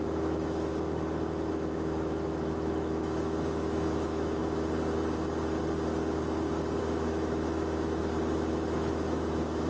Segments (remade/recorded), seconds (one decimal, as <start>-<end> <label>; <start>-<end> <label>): 0.0-0.7 remade; 0.7-1.5 recorded; 1.5-4.4 remade; 4.4-6.8 recorded; 6.8-8.0 remade; 8.0-8.5 recorded; 8.5-9.7 remade